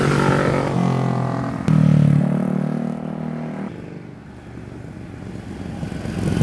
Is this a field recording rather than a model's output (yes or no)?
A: yes